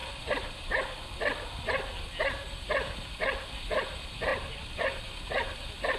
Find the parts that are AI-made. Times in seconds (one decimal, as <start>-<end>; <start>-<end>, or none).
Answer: 0.0-0.8; 4.3-4.9